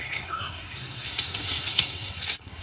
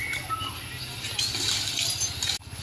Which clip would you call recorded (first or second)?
second